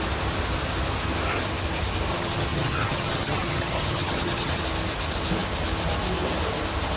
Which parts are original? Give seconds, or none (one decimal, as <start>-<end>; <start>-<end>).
0.0-2.1; 4.6-7.0